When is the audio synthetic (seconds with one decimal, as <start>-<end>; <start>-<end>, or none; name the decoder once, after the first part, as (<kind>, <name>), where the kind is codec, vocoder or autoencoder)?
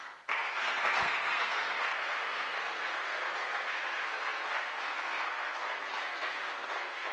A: 0.0-7.1 (codec, SNAC)